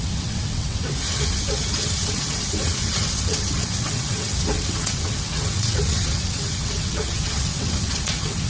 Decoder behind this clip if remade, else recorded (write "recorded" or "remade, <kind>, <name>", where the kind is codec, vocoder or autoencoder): remade, vocoder, WaveNeXt